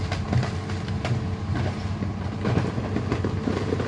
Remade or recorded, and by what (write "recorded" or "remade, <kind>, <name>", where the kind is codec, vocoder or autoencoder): recorded